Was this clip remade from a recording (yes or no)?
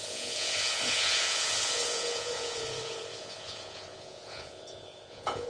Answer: yes